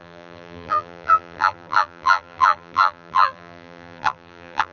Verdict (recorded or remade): remade